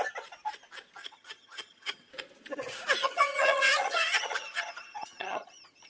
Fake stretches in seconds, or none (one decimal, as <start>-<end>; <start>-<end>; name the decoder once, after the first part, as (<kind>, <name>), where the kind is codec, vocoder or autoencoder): 1.0-2.1 (vocoder, HiFi-GAN); 3.0-5.9